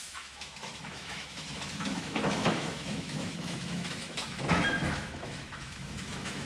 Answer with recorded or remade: remade